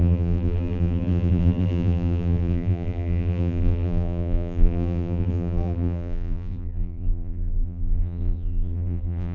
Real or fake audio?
fake